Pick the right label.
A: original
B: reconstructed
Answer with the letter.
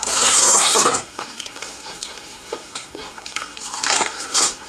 B